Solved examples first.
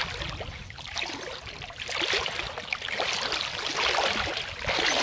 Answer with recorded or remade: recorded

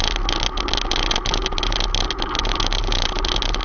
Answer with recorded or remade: recorded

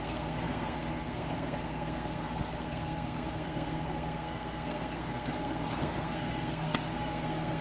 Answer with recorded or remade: remade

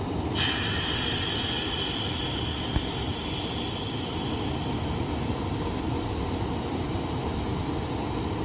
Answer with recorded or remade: recorded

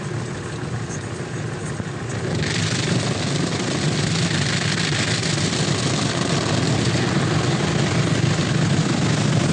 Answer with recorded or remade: recorded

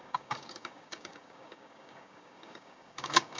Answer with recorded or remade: remade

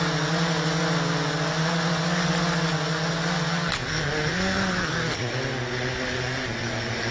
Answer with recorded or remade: recorded